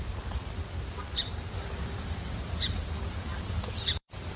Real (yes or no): no